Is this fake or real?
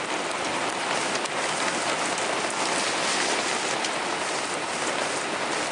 real